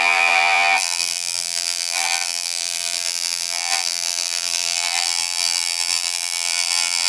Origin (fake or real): fake